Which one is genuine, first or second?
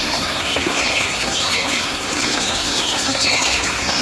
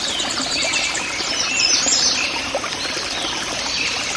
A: second